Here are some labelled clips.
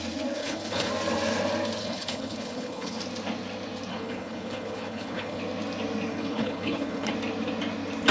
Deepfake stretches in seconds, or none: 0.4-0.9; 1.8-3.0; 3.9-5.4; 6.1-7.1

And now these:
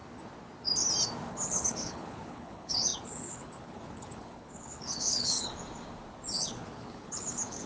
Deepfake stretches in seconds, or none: 1.3-5.5; 6.3-7.7

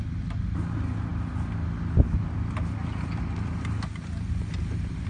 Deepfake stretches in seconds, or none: none

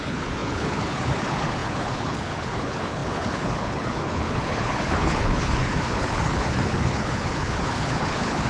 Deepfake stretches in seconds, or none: 0.0-8.5